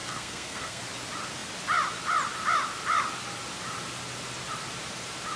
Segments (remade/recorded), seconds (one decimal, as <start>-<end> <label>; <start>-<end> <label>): 0.0-0.8 remade; 0.8-5.4 recorded